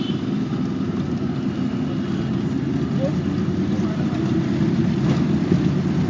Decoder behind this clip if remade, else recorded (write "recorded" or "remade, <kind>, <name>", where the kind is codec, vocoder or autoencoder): recorded